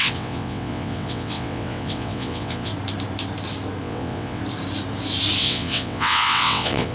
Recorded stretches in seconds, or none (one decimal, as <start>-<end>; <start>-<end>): 2.7-3.8; 4.4-5.4